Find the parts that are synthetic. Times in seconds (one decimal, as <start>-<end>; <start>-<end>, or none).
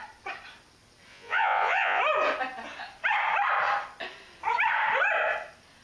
1.1-2.0